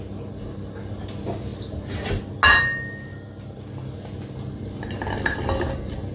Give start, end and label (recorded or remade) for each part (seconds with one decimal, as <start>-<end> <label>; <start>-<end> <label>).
0.0-6.1 recorded